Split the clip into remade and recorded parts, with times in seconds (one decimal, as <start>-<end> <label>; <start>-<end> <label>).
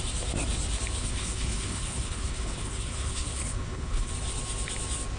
0.0-1.0 recorded; 1.0-4.1 remade; 4.1-5.2 recorded